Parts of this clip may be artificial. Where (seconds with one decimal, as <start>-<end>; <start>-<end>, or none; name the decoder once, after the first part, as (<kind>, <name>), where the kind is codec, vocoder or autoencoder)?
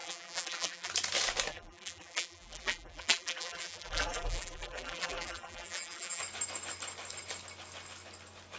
0.0-0.9 (vocoder, BigVGAN v2); 1.5-6.2